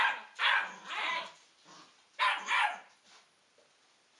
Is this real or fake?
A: real